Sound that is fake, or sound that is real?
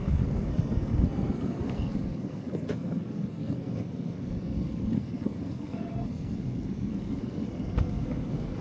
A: fake